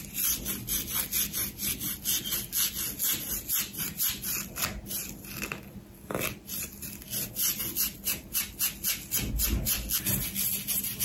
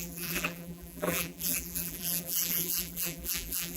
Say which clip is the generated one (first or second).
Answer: second